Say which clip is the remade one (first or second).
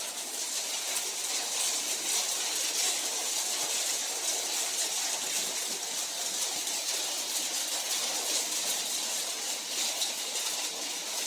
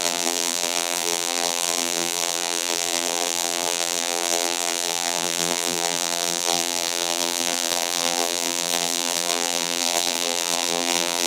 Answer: second